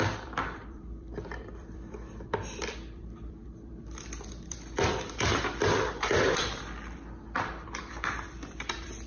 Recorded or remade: remade